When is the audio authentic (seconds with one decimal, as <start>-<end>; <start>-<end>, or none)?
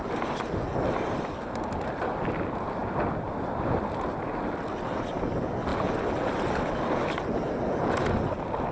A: 0.0-8.7